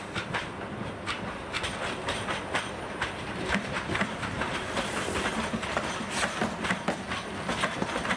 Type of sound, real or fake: real